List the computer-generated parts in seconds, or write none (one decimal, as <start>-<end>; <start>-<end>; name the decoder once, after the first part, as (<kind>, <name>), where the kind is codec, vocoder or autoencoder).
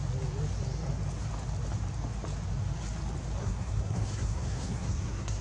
3.4-5.4 (codec, SNAC)